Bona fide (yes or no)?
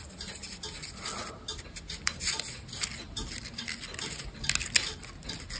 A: yes